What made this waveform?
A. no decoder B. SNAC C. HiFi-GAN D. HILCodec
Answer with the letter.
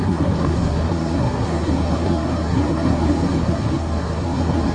B